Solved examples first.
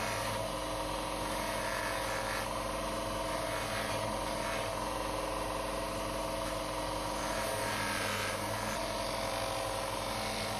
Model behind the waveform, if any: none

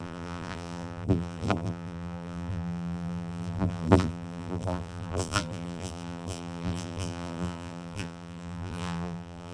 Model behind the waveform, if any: vocoder, BigVGAN v2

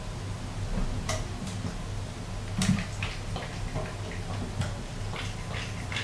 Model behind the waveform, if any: none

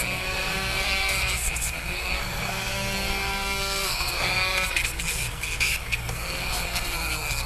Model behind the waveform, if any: codec, SNAC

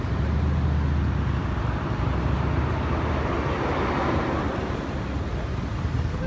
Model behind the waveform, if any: none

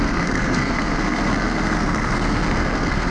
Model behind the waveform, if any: codec, SNAC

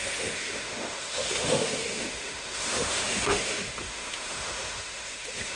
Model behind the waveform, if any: autoencoder, DAC-VAE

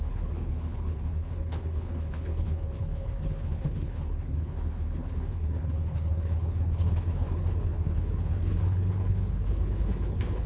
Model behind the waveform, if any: codec, HILCodec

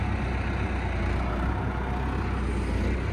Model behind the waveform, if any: none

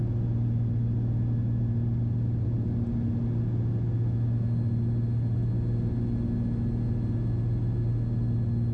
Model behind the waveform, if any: none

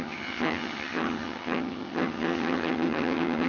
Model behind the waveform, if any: vocoder, HiFi-GAN